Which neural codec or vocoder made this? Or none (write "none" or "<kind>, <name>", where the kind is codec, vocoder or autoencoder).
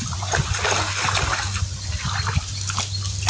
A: none